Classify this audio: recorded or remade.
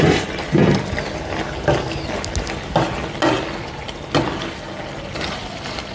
recorded